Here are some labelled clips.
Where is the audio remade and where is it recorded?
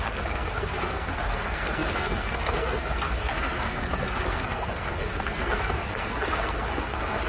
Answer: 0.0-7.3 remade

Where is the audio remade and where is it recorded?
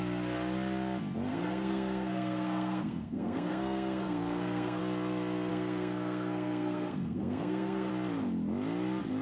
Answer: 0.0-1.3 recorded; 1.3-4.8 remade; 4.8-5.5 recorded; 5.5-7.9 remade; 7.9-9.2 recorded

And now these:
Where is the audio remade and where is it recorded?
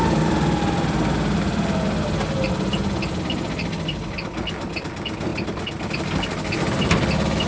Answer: 0.0-7.5 recorded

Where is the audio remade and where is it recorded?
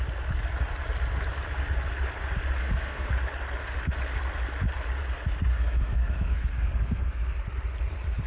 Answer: 0.0-2.6 recorded; 2.6-3.1 remade; 3.1-5.5 recorded; 5.5-7.2 remade; 7.2-8.3 recorded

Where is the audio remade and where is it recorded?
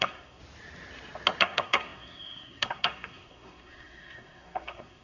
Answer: 0.0-0.4 remade; 0.4-1.4 recorded; 1.4-5.0 remade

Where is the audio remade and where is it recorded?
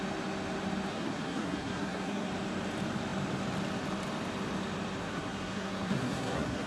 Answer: 0.0-0.9 recorded; 0.9-2.3 remade; 2.3-5.0 recorded; 5.0-6.7 remade